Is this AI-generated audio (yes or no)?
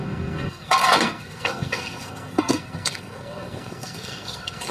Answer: yes